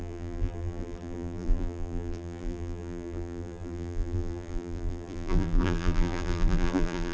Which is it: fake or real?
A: fake